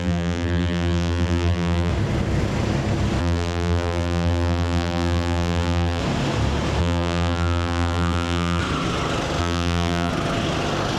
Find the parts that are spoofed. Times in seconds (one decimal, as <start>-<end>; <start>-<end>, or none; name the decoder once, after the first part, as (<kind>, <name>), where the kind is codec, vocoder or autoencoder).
0.0-1.9 (vocoder, BigVGAN v2); 3.2-6.0; 6.8-8.6; 9.4-10.1